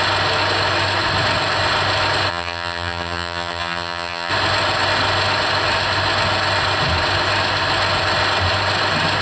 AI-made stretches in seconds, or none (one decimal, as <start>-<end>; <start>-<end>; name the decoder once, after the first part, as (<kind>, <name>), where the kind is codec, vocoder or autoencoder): 2.3-4.3 (vocoder, HiFi-GAN)